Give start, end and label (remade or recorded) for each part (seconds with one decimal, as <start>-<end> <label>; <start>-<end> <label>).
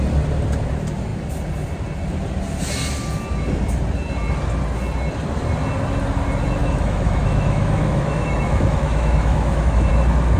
0.0-6.6 recorded; 6.6-9.9 remade; 9.9-10.4 recorded